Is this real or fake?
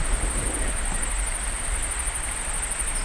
real